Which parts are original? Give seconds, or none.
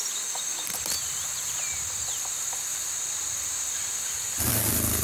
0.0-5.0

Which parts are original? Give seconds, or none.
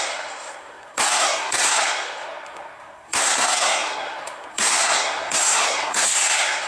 none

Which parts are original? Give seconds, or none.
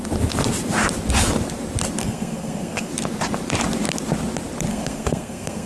0.0-2.0; 2.9-4.7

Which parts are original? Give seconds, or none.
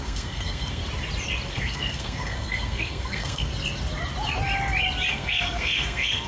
0.8-1.5; 3.5-5.1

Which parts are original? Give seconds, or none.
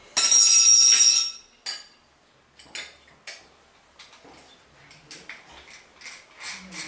0.0-6.9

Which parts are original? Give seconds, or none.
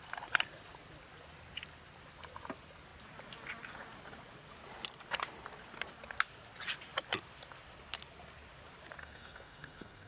0.0-9.0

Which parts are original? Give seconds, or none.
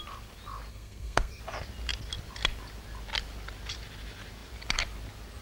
0.0-0.7; 1.4-5.4